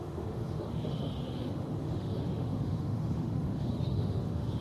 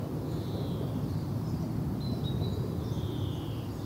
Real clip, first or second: second